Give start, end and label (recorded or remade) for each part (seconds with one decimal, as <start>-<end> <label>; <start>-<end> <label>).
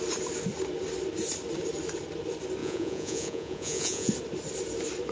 0.0-2.6 recorded; 2.6-4.1 remade; 4.1-5.1 recorded